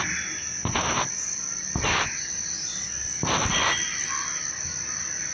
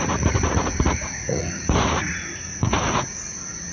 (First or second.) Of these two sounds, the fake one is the second